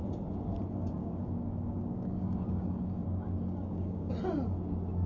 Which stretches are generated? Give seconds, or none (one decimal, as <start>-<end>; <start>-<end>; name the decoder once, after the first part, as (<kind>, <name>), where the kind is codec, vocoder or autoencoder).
1.0-4.1 (codec, DAC)